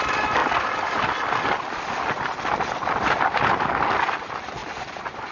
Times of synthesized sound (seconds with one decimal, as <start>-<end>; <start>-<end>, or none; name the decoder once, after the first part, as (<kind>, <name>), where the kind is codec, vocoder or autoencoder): none